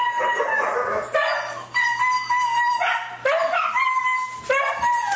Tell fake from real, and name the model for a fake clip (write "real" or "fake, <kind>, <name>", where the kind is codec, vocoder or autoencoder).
real